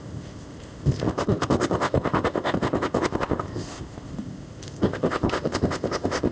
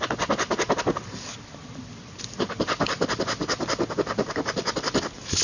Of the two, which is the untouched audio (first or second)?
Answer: second